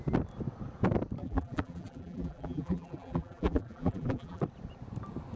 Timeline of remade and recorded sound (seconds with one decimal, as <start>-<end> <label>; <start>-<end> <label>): 0.0-1.2 recorded; 1.2-4.4 remade; 4.4-5.4 recorded